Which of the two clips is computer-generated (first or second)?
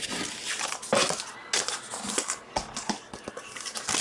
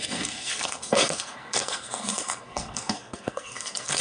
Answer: second